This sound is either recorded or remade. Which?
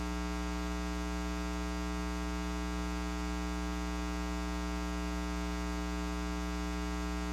recorded